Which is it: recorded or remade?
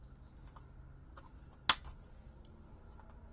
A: recorded